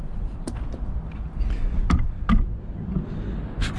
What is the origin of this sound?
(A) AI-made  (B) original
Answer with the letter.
B